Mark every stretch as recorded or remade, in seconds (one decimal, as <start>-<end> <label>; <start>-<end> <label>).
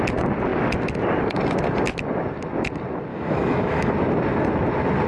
0.0-3.1 recorded; 3.1-3.9 remade; 3.9-5.1 recorded